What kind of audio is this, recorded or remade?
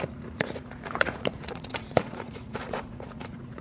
remade